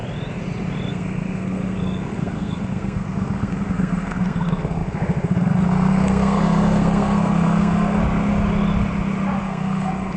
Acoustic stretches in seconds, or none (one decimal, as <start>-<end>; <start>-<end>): 0.0-0.9; 8.0-9.4